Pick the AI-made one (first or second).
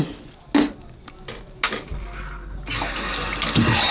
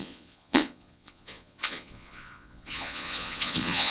second